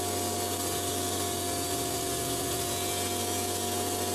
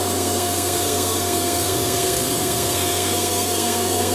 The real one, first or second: first